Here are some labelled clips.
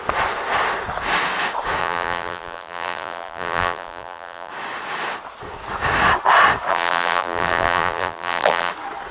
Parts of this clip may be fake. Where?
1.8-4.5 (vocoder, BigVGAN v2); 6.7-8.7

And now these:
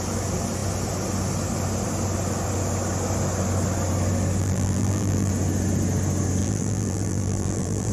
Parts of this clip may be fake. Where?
4.4-5.3 (vocoder, BigVGAN v2); 6.4-7.9

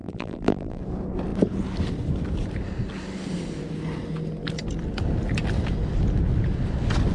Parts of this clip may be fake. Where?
0.0-0.8 (vocoder, BigVGAN v2)

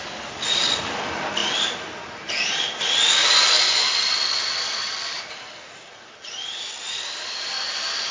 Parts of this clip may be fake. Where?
none

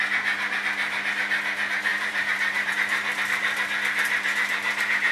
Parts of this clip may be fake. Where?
1.9-2.7 (vocoder, BigVGAN v2)